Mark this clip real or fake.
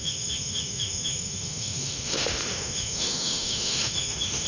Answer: fake